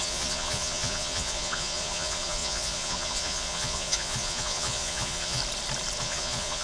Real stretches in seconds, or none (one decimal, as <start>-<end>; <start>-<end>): 5.4-6.0